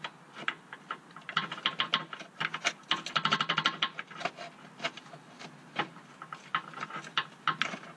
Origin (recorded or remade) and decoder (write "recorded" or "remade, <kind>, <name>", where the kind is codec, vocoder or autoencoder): recorded